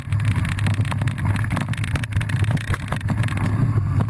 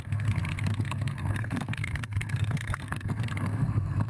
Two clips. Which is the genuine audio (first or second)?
first